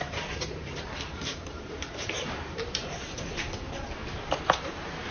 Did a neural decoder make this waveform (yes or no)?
yes